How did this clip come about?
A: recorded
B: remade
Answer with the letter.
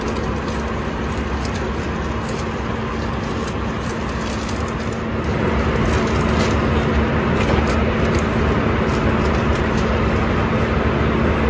A